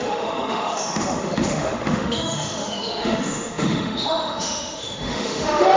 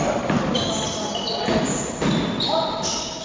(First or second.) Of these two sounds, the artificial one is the first